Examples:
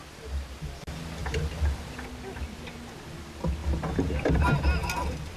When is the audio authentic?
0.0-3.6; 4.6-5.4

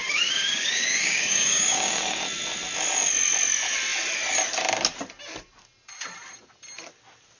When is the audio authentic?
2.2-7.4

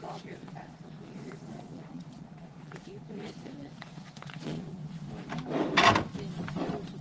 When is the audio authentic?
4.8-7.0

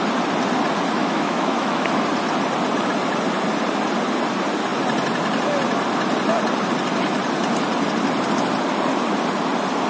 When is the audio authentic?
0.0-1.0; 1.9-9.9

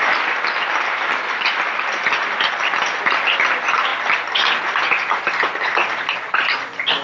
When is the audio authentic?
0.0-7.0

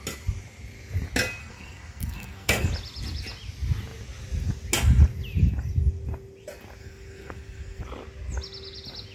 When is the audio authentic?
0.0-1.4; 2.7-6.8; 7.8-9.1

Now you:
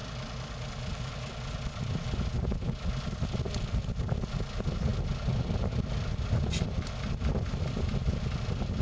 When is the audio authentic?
0.0-8.8

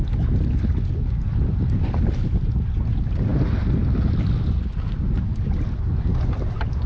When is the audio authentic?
0.0-6.9